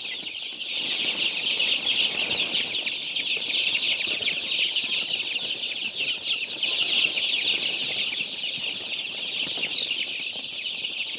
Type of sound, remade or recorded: recorded